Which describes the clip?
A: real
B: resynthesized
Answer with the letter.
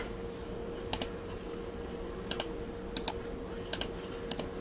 A